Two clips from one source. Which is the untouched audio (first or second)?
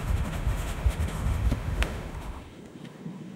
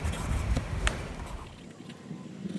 second